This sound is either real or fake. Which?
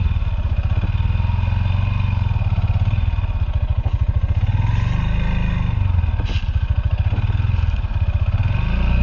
real